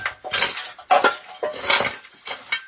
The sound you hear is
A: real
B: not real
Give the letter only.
A